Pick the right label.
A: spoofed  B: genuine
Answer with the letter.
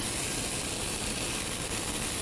B